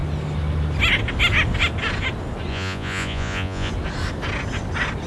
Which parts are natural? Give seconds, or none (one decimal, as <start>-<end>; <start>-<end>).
0.0-2.5; 3.7-5.1